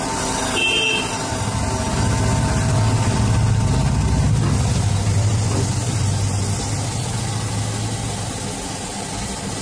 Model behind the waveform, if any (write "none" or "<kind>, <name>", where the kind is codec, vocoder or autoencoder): none